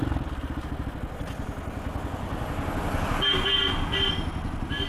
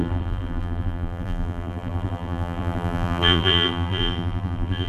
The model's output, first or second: second